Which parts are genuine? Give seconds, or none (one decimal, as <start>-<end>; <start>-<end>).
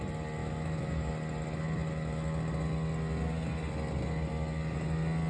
0.0-0.4; 1.1-5.3